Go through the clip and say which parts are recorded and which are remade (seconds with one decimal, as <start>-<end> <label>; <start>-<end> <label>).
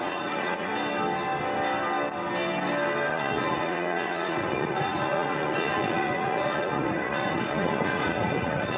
0.0-0.7 remade; 0.7-3.1 recorded; 3.1-8.8 remade